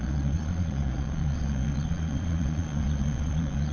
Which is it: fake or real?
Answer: fake